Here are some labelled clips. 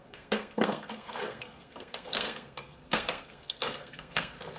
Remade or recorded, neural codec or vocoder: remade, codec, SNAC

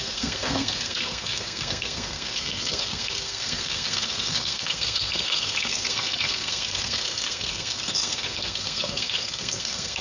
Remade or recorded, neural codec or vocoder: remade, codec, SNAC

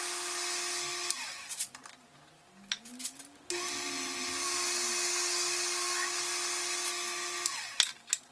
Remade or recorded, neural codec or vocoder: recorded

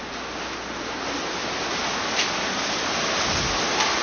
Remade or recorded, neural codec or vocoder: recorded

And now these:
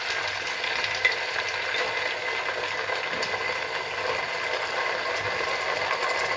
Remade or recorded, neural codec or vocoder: recorded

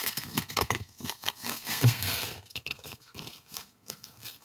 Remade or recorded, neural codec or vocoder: remade, codec, SNAC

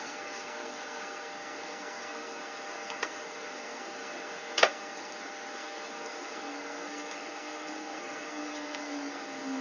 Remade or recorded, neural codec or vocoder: remade, codec, SNAC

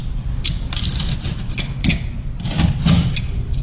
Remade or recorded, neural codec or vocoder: recorded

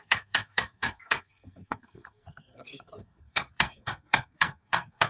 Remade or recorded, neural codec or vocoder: remade, codec, SNAC